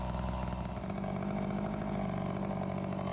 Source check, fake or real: real